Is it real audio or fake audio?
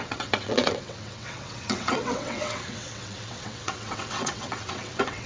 fake